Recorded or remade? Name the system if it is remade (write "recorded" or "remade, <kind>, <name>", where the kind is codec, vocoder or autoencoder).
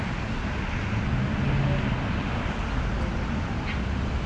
recorded